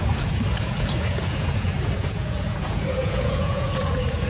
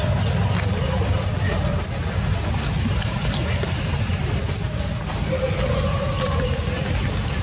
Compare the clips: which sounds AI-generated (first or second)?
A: first